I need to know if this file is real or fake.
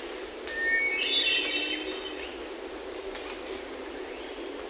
real